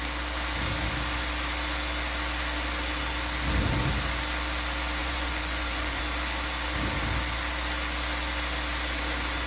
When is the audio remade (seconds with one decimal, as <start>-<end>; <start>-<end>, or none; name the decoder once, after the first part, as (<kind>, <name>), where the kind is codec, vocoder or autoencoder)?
5.0-6.0 (vocoder, Vocos)